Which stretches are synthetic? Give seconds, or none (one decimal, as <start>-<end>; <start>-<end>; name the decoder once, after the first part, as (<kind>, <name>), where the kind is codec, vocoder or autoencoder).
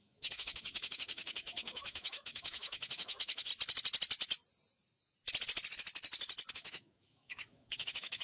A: 0.0-3.5 (autoencoder, DAC-VAE); 6.5-8.2